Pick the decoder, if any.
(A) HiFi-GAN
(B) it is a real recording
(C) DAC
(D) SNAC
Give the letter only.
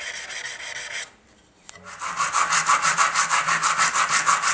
B